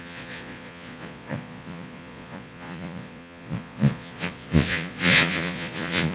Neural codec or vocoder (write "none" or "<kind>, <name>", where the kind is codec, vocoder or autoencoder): vocoder, Vocos